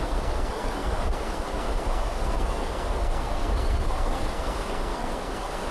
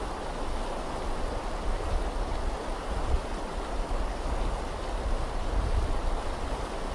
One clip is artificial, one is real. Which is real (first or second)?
second